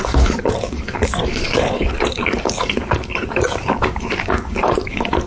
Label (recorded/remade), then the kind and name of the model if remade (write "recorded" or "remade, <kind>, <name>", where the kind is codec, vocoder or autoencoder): remade, codec, DAC